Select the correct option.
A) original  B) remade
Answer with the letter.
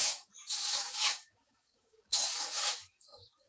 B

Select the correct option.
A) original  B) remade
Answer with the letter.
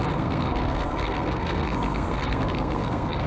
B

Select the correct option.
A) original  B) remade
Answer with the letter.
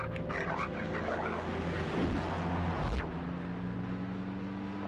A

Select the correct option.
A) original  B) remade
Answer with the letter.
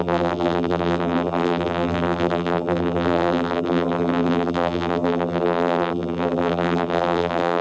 B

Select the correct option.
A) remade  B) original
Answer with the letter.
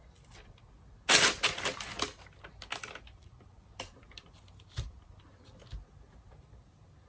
B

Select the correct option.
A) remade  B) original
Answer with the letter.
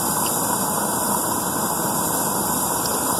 B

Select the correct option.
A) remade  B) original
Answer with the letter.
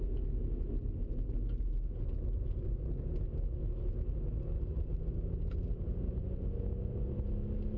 B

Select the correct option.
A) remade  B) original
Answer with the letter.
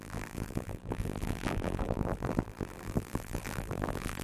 A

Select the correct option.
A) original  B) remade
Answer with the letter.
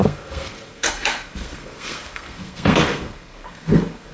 B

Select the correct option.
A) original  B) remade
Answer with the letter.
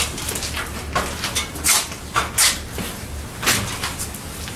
A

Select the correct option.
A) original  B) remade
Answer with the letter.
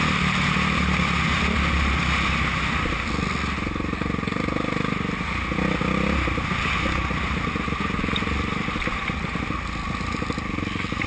A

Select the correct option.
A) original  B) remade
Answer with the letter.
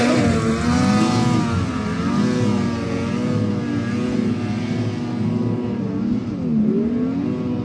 A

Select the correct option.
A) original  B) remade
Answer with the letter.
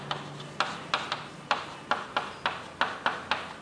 A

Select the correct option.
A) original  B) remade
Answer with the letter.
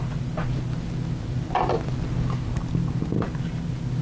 A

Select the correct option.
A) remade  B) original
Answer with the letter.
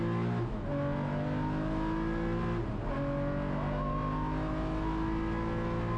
B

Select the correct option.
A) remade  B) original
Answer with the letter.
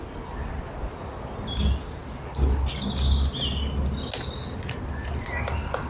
B